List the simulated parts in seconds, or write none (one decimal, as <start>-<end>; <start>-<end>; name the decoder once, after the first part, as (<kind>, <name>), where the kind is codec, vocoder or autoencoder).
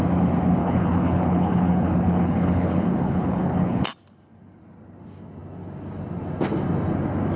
0.6-3.8 (codec, HILCodec)